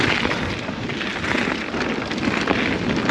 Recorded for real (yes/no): yes